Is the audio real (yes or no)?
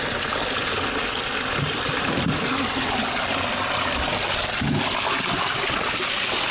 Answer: yes